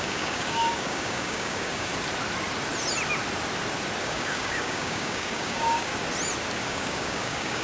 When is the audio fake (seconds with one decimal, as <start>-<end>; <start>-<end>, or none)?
0.0-1.9; 4.0-5.9; 6.6-7.6